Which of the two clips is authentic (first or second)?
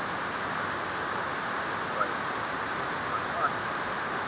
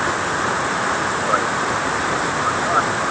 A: first